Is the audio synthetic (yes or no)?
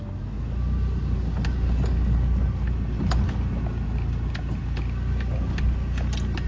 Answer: no